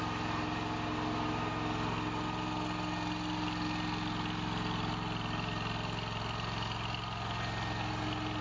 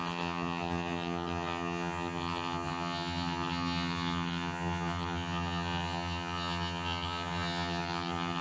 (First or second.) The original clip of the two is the first